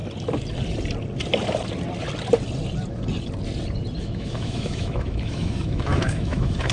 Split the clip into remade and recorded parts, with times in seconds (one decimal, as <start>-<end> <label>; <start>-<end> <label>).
0.0-4.0 recorded; 4.0-6.7 remade